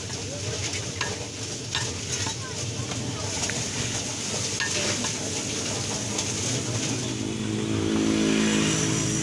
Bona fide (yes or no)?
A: yes